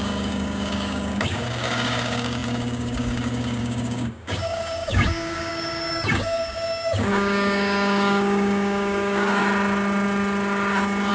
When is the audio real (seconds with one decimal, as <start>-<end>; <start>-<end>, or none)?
9.4-11.1